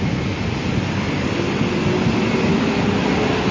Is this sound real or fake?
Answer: real